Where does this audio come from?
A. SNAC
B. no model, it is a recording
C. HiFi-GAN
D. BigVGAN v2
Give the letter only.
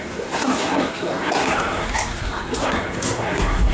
A